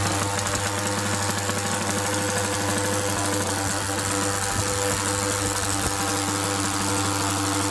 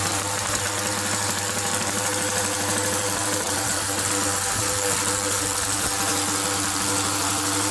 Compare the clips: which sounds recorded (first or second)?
first